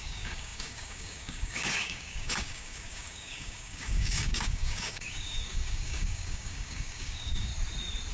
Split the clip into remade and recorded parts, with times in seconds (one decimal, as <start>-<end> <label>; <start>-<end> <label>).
0.0-7.5 remade; 7.5-8.1 recorded